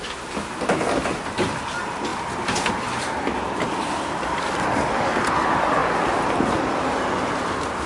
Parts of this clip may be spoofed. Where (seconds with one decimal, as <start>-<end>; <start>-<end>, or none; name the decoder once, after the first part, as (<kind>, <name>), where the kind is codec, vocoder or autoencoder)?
none